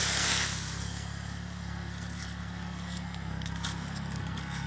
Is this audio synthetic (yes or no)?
yes